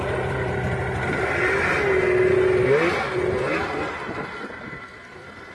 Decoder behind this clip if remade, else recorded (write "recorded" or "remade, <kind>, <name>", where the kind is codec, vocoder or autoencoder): recorded